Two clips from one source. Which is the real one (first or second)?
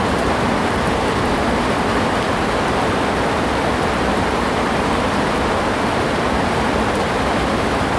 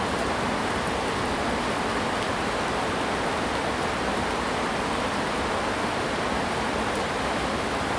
second